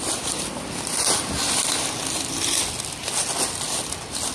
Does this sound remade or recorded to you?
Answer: recorded